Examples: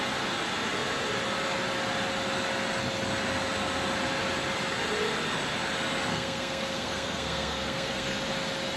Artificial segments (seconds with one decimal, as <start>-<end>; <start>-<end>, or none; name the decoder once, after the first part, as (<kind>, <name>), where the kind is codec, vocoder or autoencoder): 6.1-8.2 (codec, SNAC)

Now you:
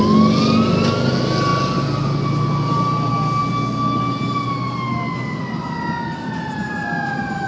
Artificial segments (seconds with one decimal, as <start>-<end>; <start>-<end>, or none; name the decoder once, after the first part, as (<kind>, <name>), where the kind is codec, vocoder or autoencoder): none

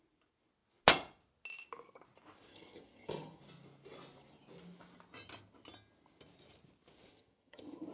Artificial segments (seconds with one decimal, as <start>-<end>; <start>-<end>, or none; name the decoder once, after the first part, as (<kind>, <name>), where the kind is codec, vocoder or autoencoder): 2.5-3.4 (vocoder, HiFi-GAN); 7.1-7.9